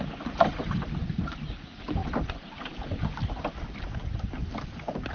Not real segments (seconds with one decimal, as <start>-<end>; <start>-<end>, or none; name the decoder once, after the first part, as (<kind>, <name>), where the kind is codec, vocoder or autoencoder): 1.0-1.6 (vocoder, BigVGAN v2)